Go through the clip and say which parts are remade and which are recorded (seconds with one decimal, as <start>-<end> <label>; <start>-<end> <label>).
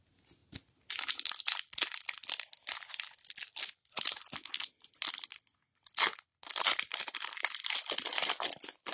0.0-8.9 recorded